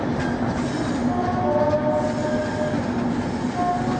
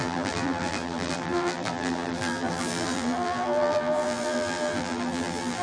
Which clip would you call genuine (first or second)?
first